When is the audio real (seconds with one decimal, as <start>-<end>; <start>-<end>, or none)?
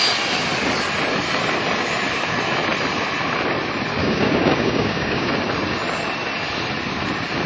0.0-4.0; 5.3-7.5